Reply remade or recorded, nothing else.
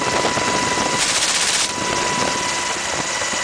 recorded